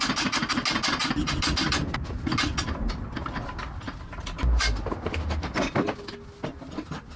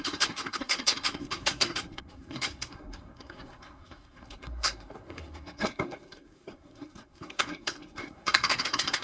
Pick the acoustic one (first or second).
first